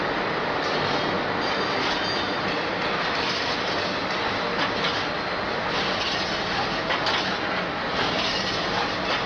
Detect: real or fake real